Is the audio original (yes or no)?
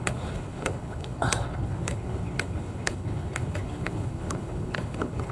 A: no